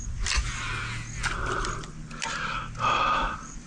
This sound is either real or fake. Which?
real